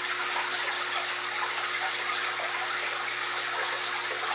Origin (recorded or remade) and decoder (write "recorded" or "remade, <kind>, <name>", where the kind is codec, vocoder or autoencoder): recorded